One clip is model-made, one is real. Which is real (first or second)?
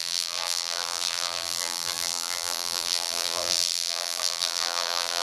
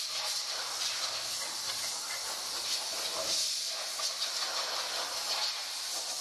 second